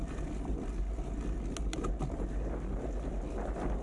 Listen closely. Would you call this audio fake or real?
real